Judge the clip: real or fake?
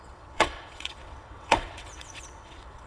fake